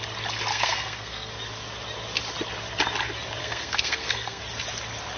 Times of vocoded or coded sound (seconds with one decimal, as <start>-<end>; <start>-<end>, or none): 0.5-1.3; 3.4-4.4